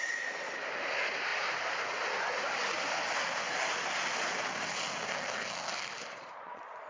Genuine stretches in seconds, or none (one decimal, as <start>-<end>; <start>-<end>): 0.0-6.1

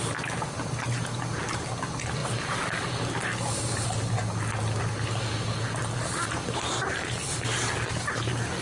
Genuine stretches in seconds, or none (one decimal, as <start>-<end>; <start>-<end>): 0.0-8.6